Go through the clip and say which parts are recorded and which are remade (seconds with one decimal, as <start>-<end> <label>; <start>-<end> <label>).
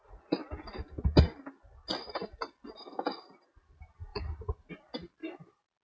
0.0-4.1 recorded; 4.1-4.7 remade; 4.7-5.2 recorded; 5.2-5.8 remade